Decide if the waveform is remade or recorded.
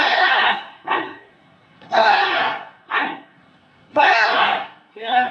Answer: remade